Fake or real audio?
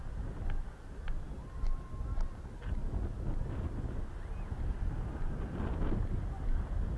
real